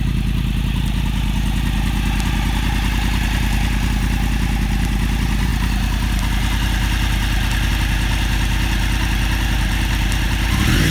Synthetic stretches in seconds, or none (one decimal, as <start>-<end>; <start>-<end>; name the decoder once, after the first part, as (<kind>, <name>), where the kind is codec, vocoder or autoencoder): none